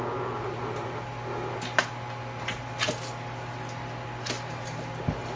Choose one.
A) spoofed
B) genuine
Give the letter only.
B